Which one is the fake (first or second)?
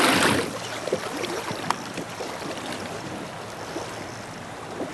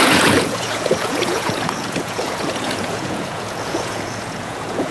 second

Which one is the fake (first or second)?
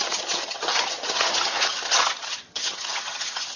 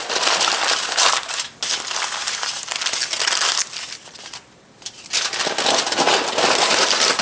first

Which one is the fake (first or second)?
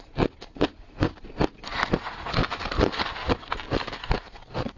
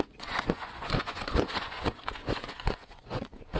second